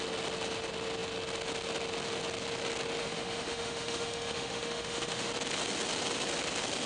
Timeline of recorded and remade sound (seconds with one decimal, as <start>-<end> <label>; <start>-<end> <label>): 0.0-3.0 recorded; 3.0-5.3 remade; 5.3-6.9 recorded

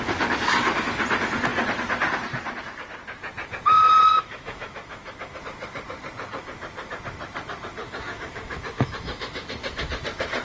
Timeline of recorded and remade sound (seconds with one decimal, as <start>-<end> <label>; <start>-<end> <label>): 0.0-4.1 recorded; 4.1-5.4 remade; 5.4-7.8 recorded; 7.8-10.0 remade; 10.0-10.4 recorded

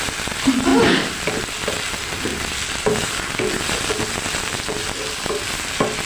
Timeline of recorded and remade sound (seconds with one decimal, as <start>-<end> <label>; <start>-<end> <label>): 0.0-6.0 recorded

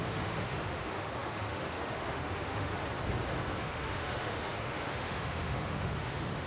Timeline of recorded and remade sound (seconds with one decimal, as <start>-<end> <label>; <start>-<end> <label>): 0.0-2.7 remade; 2.7-3.6 recorded; 3.6-6.5 remade

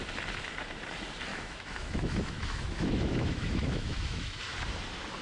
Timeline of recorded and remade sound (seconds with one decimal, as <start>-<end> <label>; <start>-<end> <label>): 0.0-1.3 recorded; 1.3-4.4 remade; 4.4-5.2 recorded

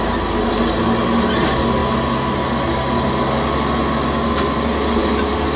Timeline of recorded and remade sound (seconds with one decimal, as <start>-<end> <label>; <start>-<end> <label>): 0.0-5.6 recorded

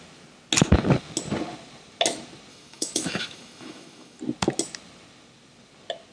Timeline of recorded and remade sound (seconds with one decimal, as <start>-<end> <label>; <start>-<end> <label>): 0.0-2.5 recorded; 2.5-4.2 remade; 4.2-6.1 recorded